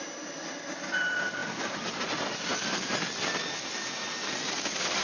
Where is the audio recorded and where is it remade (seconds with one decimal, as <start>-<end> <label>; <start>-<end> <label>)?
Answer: 0.0-5.0 recorded